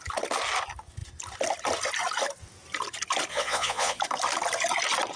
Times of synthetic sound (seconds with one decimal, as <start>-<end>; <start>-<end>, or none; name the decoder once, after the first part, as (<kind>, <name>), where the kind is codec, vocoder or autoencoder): 3.3-4.0 (vocoder, Vocos)